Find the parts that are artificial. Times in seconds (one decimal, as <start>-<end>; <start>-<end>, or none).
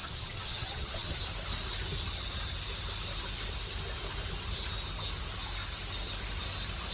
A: 0.0-1.2